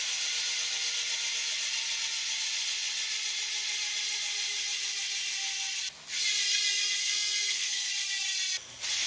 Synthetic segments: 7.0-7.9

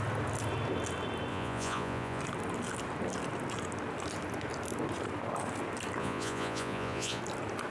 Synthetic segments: 1.3-2.2; 6.0-7.2

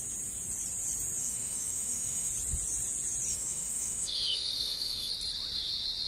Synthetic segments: 1.2-2.3; 3.3-5.1

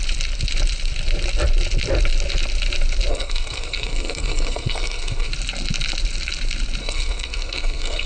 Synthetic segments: 3.1-5.3; 6.8-8.1

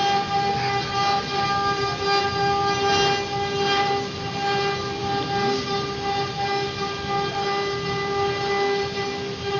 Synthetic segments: none

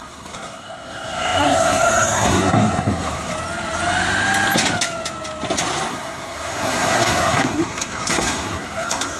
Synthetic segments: 0.0-3.3; 5.9-9.2